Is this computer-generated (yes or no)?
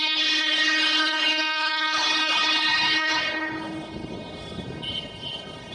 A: yes